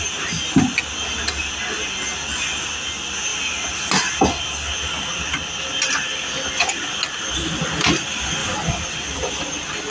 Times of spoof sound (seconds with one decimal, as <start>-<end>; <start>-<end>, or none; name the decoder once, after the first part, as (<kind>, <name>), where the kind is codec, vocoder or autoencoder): 8.4-9.4 (vocoder, BigVGAN v2)